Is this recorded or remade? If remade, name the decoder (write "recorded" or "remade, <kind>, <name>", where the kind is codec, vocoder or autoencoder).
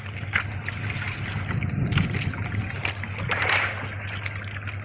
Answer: recorded